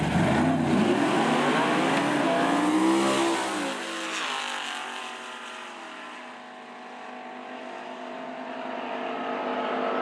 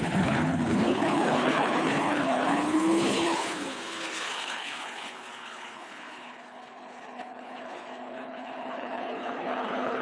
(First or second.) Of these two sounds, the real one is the first